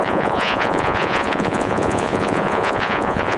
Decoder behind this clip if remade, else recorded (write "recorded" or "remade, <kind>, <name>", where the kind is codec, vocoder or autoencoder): remade, vocoder, Vocos